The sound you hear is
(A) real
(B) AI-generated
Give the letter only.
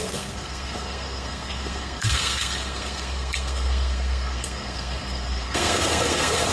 B